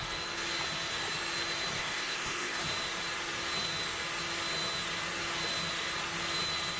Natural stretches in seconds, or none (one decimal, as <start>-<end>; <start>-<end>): 0.0-1.8; 2.6-6.8